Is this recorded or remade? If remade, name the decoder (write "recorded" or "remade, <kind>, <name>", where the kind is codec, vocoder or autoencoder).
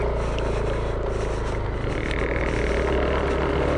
recorded